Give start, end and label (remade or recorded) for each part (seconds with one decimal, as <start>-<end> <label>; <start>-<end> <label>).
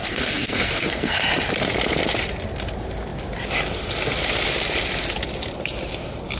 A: 0.0-1.2 remade; 1.2-6.4 recorded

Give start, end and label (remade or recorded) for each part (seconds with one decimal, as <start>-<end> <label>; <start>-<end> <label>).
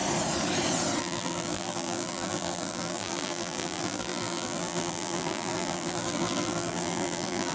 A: 0.0-1.0 recorded; 1.0-7.5 remade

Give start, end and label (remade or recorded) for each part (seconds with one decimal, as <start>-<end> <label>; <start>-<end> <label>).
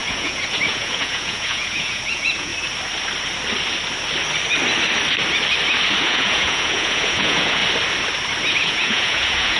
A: 0.0-2.5 remade; 2.5-6.0 recorded; 6.0-7.6 remade; 7.6-8.5 recorded; 8.5-9.6 remade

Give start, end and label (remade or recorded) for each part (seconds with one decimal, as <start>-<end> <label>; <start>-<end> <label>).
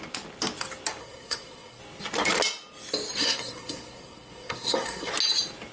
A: 0.0-1.0 recorded; 1.0-1.8 remade; 1.8-3.2 recorded; 3.2-5.1 remade; 5.1-5.7 recorded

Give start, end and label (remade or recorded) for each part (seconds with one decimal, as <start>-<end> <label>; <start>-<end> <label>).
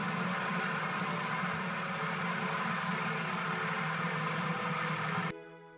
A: 0.0-5.8 recorded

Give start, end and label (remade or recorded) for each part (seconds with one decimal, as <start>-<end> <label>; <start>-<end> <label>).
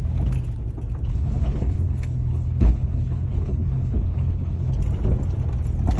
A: 0.0-1.1 recorded; 1.1-4.7 remade; 4.7-6.0 recorded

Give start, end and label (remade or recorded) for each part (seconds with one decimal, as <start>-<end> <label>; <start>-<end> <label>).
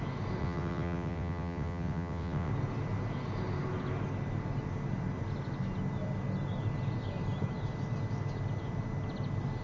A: 0.0-0.4 recorded; 0.4-2.5 remade; 2.5-9.6 recorded